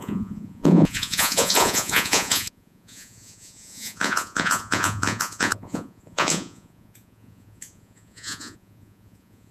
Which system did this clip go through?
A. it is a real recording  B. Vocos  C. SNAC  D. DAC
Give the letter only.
B